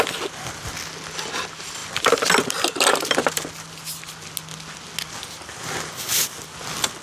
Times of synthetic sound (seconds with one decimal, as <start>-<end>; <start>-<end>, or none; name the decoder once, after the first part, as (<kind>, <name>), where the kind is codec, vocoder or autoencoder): none